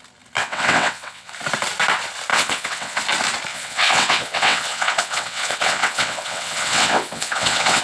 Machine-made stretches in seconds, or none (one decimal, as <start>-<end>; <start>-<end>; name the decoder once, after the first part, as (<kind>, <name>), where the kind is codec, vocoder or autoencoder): 0.4-1.3 (vocoder, WaveNeXt); 2.3-3.0; 3.5-7.8